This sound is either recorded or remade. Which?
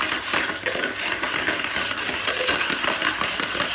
recorded